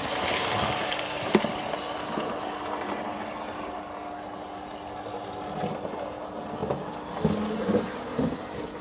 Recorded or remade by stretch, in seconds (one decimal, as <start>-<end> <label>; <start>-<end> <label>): 0.0-8.8 recorded